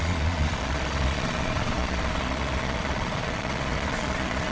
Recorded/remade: remade